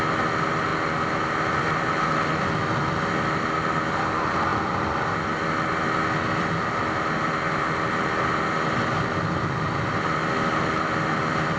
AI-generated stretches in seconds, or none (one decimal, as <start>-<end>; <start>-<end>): none